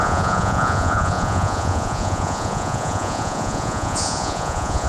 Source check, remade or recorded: remade